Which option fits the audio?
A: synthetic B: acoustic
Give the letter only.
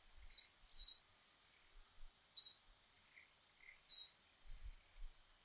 B